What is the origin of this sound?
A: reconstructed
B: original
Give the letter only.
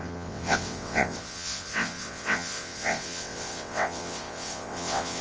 A